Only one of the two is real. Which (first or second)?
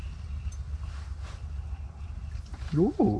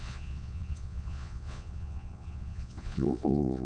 first